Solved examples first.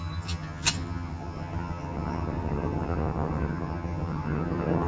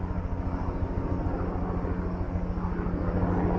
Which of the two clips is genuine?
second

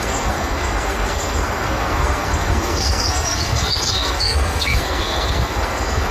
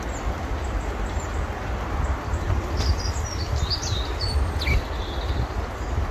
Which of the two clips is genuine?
second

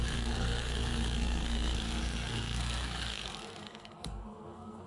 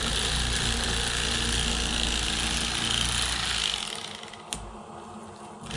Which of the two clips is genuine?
second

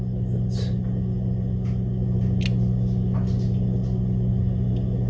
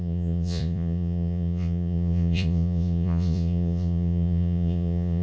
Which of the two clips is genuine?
first